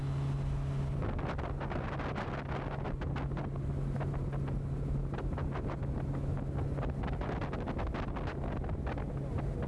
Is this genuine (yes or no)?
yes